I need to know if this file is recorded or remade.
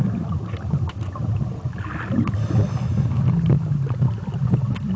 recorded